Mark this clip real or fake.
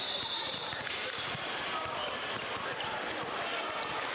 fake